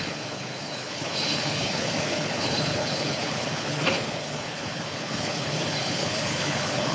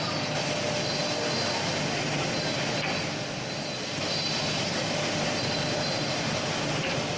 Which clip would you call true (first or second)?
second